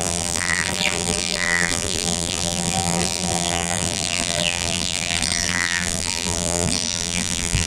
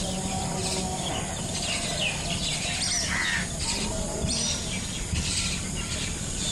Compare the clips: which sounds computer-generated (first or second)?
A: first